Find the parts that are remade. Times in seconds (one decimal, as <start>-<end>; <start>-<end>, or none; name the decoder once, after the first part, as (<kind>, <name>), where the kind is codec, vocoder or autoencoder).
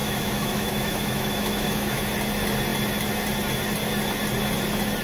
0.0-2.0 (autoencoder, DAC-VAE)